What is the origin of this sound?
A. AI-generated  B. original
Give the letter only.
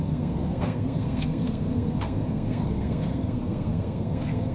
A